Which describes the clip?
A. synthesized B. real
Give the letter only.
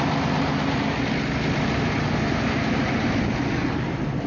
B